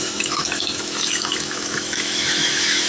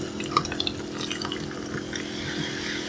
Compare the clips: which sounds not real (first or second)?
first